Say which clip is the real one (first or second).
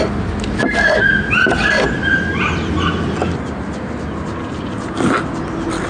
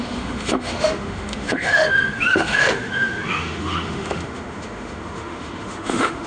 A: first